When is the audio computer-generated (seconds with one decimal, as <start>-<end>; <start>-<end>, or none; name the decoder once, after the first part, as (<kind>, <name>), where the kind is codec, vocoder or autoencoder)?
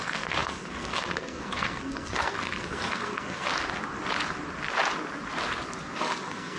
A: 0.0-3.5 (codec, SNAC); 6.0-6.6